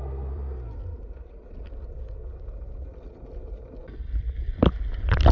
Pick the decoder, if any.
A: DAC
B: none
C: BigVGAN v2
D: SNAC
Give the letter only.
C